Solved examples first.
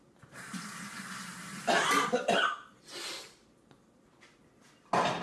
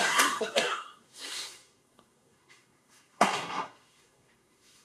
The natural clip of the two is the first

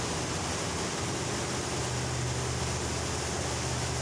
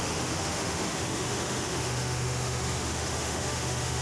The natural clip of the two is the first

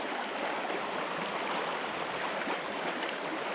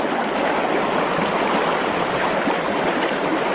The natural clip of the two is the second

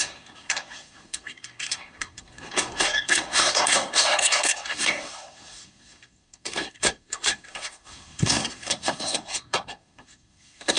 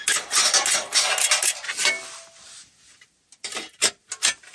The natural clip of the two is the second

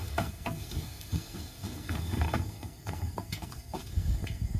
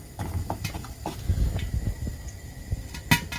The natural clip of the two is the second